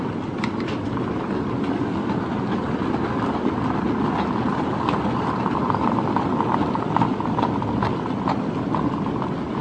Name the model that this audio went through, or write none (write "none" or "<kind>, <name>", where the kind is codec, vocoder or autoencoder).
none